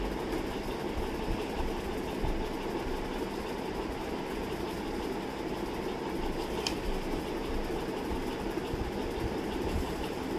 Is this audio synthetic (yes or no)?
no